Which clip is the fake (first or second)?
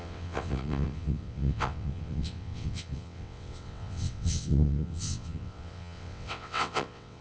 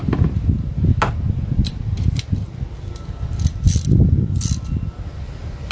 first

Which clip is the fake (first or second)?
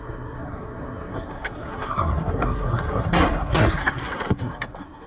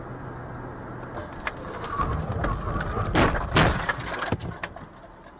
first